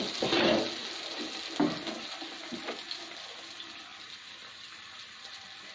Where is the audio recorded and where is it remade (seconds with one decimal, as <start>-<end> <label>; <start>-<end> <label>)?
0.0-5.7 recorded